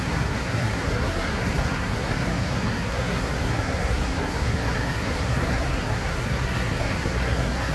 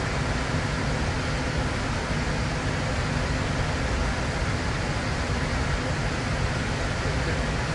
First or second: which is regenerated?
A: first